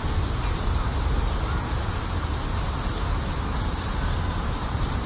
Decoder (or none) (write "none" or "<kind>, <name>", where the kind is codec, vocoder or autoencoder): vocoder, BigVGAN v2